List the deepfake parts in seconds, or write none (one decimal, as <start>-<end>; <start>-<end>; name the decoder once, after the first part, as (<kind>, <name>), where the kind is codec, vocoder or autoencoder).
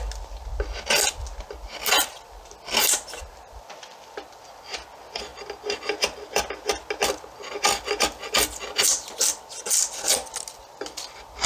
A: none